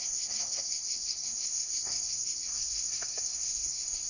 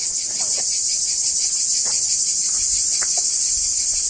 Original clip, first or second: second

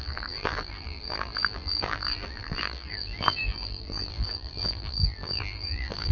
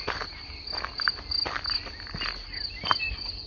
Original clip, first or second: second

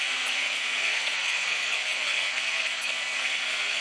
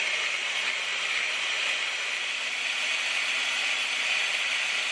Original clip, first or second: second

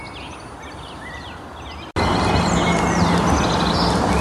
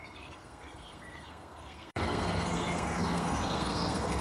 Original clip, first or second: first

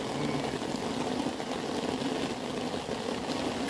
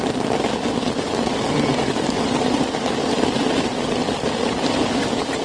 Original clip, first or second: first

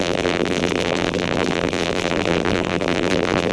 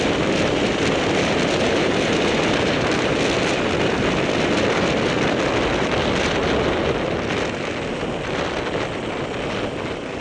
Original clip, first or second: second